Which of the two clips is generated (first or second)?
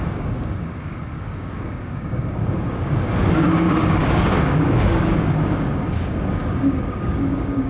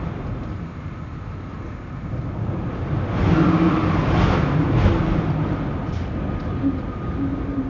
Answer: first